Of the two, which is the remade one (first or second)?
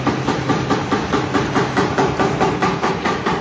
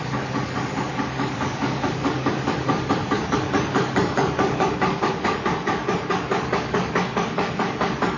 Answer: second